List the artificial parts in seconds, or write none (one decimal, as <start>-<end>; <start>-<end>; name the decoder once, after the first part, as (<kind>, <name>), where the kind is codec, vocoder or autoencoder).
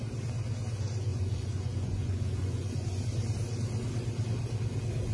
1.1-3.0 (vocoder, Vocos)